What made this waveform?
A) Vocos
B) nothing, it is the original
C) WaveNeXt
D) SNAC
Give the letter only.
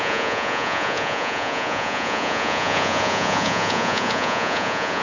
A